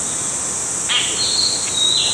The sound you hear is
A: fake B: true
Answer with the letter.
B